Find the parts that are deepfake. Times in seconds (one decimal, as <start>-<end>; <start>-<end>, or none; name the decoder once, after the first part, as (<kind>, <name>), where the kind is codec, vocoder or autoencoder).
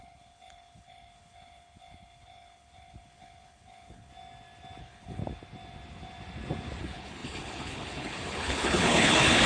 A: 0.0-4.1 (codec, HILCodec); 4.8-5.2; 6.8-9.5